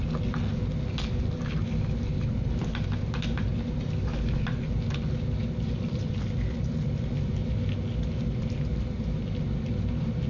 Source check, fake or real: real